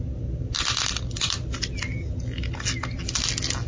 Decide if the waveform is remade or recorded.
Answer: recorded